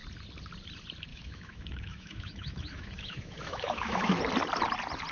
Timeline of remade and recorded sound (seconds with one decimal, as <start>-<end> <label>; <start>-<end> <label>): 0.0-1.1 recorded; 1.1-4.2 remade; 4.2-5.1 recorded

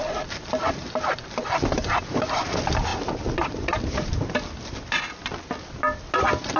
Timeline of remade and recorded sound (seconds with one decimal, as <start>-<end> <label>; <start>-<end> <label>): 0.0-2.9 recorded; 2.9-5.0 remade; 5.0-6.6 recorded

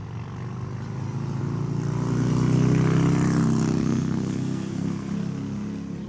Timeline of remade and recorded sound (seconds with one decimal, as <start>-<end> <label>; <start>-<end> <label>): 0.0-3.8 recorded; 3.8-5.1 remade; 5.1-6.1 recorded

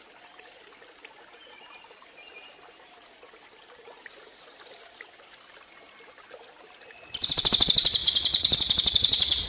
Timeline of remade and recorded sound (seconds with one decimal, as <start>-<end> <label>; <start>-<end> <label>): 0.0-8.0 recorded; 8.0-9.5 remade

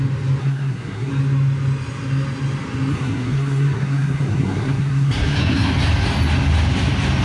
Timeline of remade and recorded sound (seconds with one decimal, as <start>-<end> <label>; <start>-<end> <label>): 0.0-0.4 recorded; 0.4-1.1 remade; 1.1-2.9 recorded; 2.9-5.7 remade; 5.7-7.2 recorded

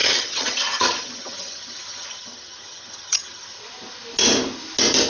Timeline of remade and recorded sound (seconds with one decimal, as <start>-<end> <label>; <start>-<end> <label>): 0.0-3.6 remade; 3.6-5.1 recorded

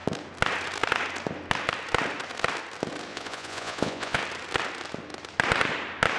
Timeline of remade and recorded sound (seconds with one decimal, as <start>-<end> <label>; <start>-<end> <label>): 0.0-3.1 recorded; 3.1-4.2 remade; 4.2-6.2 recorded

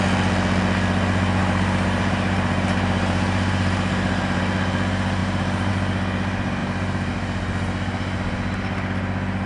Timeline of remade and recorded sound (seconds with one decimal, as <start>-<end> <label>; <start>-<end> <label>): 0.0-1.4 recorded; 1.4-4.4 remade; 4.4-5.2 recorded; 5.2-5.7 remade; 5.7-6.6 recorded; 6.6-7.1 remade; 7.1-9.5 recorded